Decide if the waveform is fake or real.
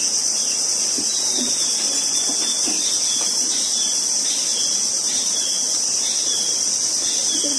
real